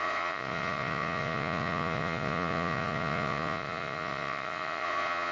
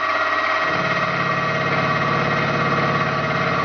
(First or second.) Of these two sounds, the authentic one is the second